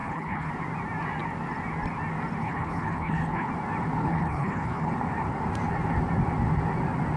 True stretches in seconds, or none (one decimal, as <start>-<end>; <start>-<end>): 0.5-2.4; 3.5-4.0; 4.9-7.2